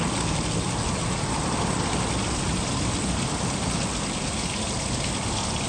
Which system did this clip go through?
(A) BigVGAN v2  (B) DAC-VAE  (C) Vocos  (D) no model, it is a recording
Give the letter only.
D